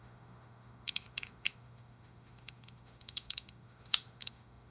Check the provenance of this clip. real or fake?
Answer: fake